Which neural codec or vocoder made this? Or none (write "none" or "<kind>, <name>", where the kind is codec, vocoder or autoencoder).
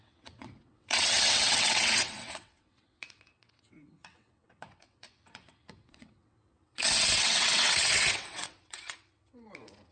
vocoder, WaveNeXt